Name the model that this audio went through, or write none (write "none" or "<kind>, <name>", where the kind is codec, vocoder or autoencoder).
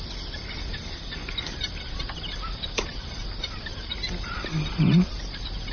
vocoder, BigVGAN v2